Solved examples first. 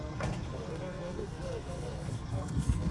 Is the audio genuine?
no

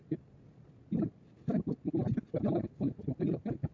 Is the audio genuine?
yes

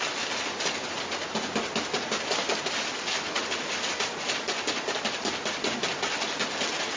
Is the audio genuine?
yes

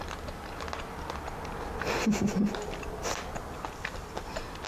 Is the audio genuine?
yes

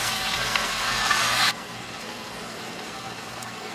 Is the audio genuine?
no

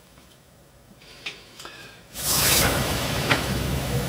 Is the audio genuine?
no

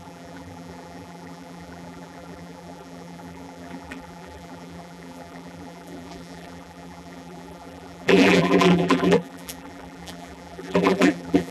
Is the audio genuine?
no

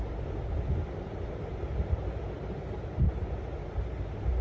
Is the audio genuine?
no